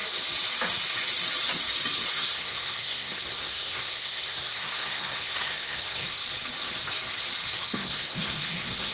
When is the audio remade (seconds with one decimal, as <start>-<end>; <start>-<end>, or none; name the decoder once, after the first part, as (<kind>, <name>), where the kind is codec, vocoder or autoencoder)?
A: 2.1-6.2 (codec, SNAC); 7.6-8.9